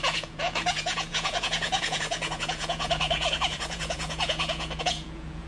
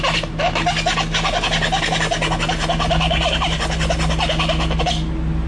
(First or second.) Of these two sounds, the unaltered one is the second